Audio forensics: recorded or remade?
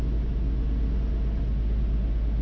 recorded